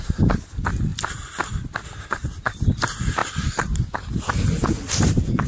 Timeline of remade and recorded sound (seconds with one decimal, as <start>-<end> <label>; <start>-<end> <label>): 0.0-5.5 recorded